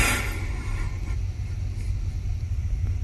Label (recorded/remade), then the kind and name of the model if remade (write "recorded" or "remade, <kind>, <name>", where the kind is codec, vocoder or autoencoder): recorded